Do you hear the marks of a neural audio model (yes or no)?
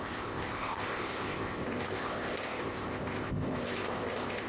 yes